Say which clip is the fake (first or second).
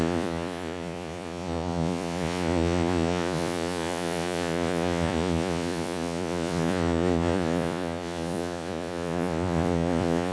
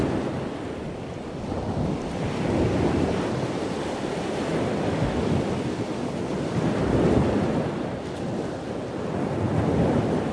first